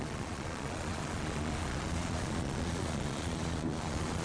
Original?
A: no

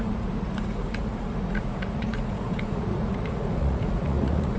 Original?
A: no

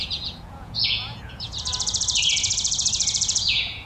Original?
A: no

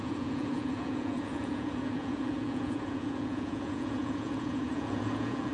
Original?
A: no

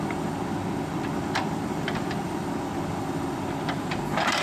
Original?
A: yes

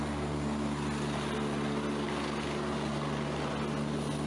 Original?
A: yes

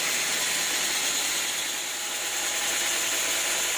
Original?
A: yes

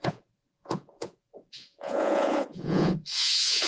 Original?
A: no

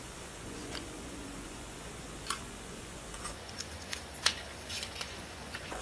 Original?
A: no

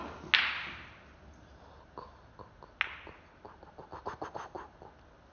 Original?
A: yes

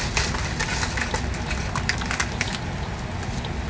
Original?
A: yes